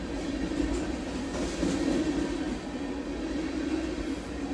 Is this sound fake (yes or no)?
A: no